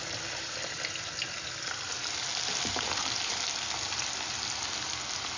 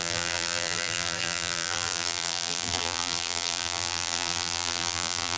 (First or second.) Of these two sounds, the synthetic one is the second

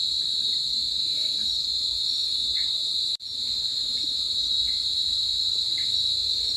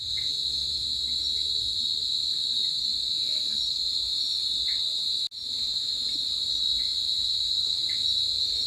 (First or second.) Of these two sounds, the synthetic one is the first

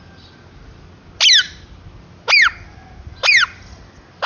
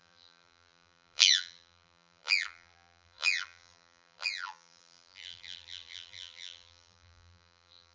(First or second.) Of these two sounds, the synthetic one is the second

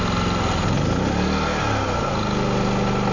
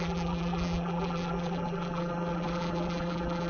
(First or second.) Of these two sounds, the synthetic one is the second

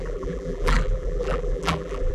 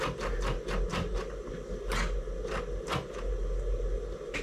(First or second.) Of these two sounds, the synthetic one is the first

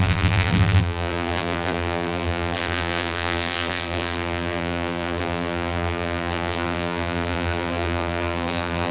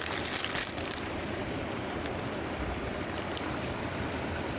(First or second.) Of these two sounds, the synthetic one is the first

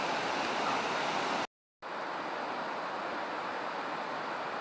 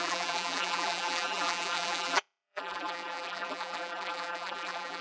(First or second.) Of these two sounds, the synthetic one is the second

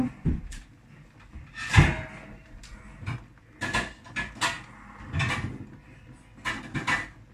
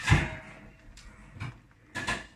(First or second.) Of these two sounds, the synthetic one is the second